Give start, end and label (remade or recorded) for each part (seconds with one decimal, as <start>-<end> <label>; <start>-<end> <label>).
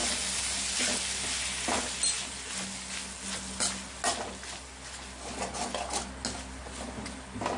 0.0-7.6 recorded